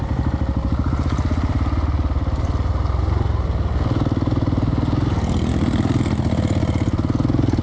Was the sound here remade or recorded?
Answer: recorded